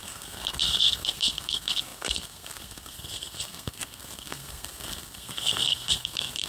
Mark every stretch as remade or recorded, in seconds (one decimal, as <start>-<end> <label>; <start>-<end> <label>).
0.0-6.5 remade